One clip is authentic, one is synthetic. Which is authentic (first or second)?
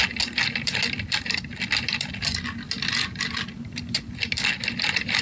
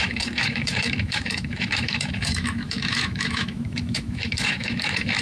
first